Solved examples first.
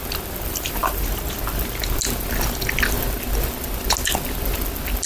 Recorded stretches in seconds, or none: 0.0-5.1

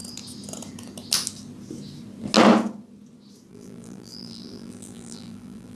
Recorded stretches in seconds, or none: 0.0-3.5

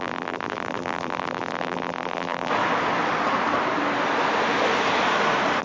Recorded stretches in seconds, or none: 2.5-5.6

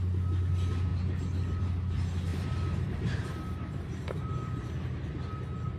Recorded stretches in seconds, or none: 0.0-2.3; 4.7-5.8